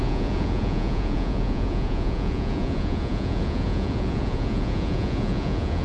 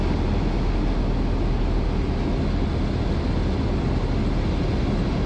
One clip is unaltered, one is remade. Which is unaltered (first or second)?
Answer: second